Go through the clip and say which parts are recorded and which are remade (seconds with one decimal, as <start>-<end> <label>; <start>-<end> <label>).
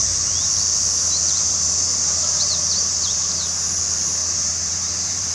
0.0-1.4 recorded; 1.4-3.8 remade; 3.8-4.2 recorded; 4.2-5.3 remade